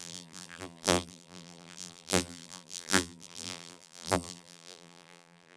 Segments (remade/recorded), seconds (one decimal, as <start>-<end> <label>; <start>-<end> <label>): 0.0-5.6 remade